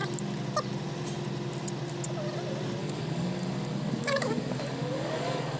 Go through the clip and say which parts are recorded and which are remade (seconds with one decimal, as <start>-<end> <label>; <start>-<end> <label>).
0.0-2.8 recorded; 2.8-5.6 remade